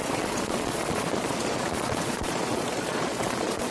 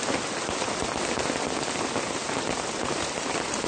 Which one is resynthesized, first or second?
first